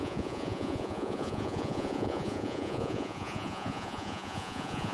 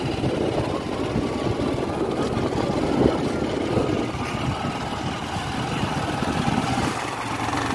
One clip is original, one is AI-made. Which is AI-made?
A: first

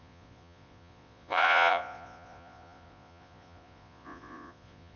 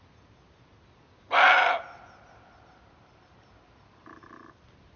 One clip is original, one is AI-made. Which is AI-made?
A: first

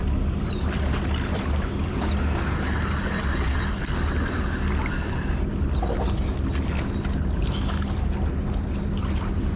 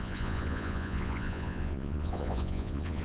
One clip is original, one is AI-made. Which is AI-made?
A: second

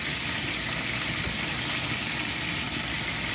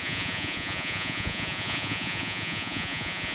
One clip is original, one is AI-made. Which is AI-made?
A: second